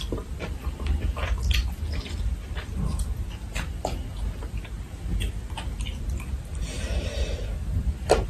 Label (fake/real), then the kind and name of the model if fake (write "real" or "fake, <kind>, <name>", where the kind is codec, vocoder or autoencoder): fake, vocoder, BigVGAN v2